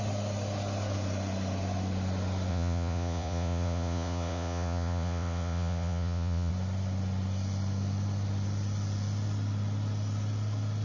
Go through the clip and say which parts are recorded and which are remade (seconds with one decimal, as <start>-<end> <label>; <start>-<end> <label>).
0.0-2.5 recorded; 2.5-6.5 remade; 6.5-10.8 recorded